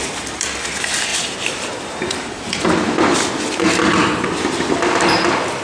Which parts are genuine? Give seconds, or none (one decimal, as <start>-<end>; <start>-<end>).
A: 0.0-1.1; 2.6-5.6